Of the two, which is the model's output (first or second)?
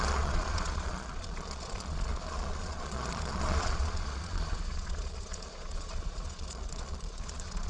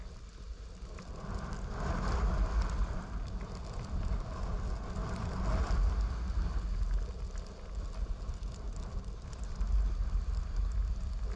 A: first